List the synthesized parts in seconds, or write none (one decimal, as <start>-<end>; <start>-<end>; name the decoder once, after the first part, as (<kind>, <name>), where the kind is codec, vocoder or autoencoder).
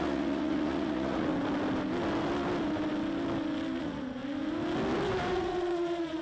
0.0-1.3 (vocoder, Vocos); 3.8-4.2; 5.3-6.2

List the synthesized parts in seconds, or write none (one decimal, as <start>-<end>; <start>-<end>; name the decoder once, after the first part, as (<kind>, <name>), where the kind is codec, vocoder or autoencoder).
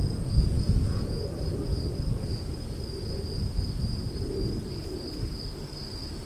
0.0-1.2 (vocoder, Vocos)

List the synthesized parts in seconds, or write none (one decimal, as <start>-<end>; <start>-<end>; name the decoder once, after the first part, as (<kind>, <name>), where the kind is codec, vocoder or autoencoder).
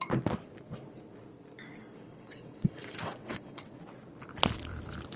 2.1-3.8 (vocoder, WaveNeXt)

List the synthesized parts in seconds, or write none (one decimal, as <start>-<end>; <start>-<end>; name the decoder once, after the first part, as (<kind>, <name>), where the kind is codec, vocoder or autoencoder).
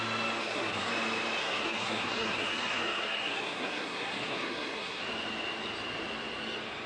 0.4-0.9 (codec, SNAC); 1.4-5.0